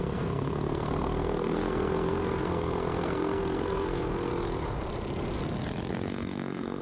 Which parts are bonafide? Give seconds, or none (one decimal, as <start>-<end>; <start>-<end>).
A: 4.3-5.9